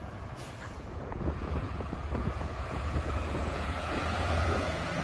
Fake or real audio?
fake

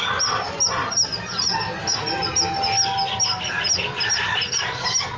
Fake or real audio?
real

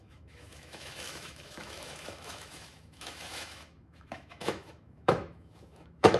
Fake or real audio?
fake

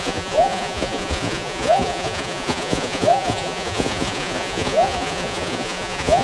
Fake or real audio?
fake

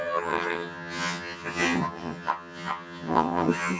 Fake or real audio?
fake